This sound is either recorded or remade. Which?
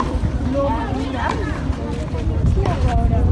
remade